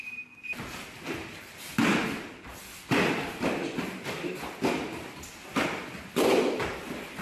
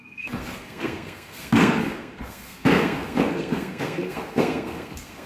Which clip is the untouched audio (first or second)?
first